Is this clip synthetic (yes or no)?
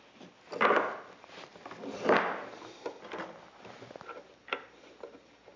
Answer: no